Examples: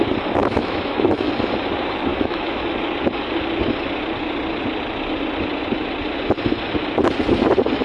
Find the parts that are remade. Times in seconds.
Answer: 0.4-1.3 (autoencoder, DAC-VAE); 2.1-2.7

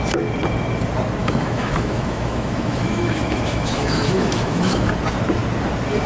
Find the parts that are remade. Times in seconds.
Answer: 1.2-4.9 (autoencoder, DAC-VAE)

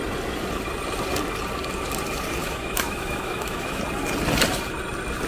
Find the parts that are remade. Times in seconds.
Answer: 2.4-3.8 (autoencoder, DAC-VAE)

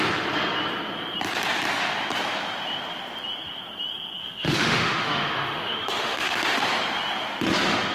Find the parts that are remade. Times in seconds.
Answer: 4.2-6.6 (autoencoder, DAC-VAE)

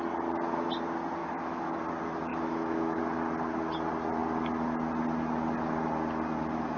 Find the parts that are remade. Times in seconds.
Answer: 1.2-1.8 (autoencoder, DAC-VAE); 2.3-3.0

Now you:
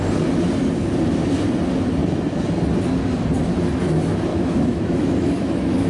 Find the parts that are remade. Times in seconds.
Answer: 4.3-5.9 (autoencoder, DAC-VAE)